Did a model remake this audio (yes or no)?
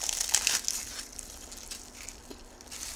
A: no